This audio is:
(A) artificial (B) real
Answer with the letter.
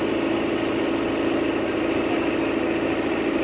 B